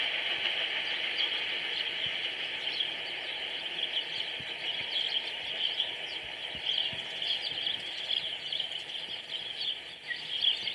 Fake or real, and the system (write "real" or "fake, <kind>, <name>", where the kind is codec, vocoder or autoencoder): real